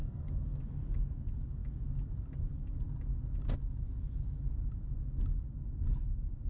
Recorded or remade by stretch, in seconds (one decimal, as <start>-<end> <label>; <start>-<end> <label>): 0.0-0.6 remade; 0.6-6.5 recorded

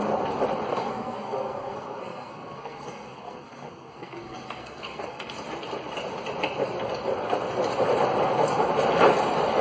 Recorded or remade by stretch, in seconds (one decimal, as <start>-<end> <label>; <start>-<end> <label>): 0.0-0.7 recorded; 0.7-5.3 remade; 5.3-9.6 recorded

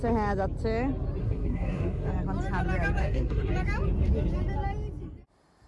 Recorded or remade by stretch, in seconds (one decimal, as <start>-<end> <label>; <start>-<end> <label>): 0.0-1.2 recorded; 1.2-2.1 remade; 2.1-3.0 recorded; 3.0-3.5 remade; 3.5-5.7 recorded